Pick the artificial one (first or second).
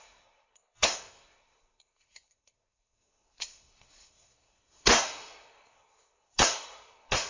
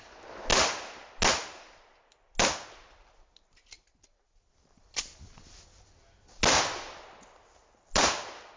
first